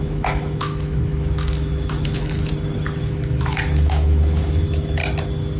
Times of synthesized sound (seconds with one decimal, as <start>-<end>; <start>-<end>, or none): 0.0-2.5; 3.0-5.0